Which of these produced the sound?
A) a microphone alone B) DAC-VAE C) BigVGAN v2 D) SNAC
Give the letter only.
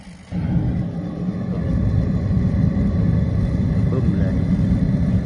A